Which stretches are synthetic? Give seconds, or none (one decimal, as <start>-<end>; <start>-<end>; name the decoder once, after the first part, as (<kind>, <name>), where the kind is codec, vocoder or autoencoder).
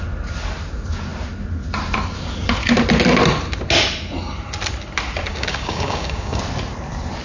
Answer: 5.3-6.4 (codec, DAC)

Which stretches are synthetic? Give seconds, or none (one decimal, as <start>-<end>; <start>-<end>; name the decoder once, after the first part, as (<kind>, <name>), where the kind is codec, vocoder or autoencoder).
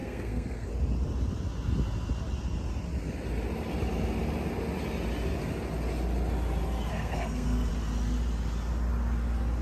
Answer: 0.0-0.7 (codec, SNAC); 6.9-7.7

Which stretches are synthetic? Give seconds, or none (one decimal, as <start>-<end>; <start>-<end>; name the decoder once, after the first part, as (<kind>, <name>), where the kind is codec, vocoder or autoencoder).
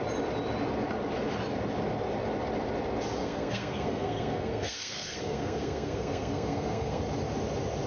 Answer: 3.2-7.0 (codec, SNAC)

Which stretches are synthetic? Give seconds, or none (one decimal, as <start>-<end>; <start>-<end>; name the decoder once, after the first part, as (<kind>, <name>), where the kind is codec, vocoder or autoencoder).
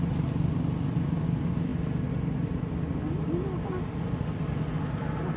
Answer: none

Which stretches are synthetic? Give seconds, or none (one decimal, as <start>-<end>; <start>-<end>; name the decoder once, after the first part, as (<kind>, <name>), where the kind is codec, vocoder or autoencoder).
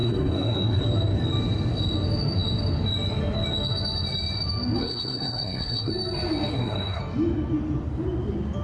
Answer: 0.0-0.8 (codec, SNAC); 4.8-5.9; 6.5-7.0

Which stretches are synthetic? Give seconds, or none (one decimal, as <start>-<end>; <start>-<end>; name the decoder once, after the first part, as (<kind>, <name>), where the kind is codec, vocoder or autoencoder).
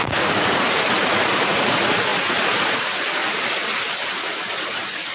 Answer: 0.0-3.2 (vocoder, Vocos); 4.6-5.1